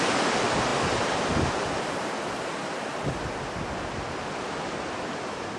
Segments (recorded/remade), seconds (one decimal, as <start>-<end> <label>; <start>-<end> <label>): 0.0-5.6 recorded